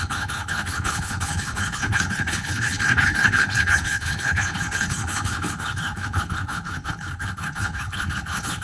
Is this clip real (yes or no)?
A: no